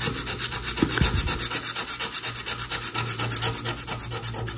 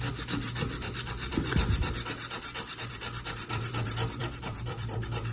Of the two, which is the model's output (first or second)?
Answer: second